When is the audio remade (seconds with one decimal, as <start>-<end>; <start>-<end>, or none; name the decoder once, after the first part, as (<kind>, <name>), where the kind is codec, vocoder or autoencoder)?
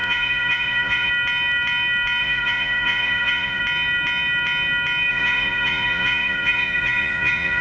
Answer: 0.0-1.1 (vocoder, Vocos); 2.2-3.6; 5.1-7.6